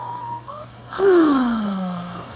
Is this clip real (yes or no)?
no